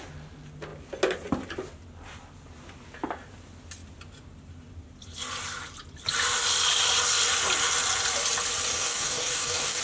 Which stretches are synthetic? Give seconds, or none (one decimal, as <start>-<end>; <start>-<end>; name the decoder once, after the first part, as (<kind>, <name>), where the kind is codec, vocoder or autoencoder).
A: 8.7-9.8 (codec, DAC)